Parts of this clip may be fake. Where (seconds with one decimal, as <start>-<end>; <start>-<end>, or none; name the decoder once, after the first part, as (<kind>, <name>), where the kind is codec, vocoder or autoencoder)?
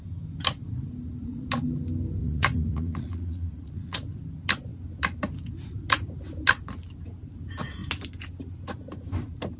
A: 2.2-4.2 (vocoder, Vocos)